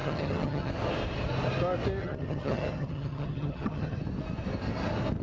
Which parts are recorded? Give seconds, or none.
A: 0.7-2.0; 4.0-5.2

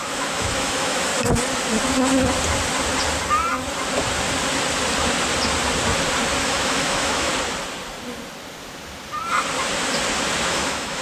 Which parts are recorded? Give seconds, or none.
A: 1.1-6.4; 7.3-10.5